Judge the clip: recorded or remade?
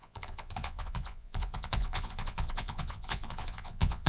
remade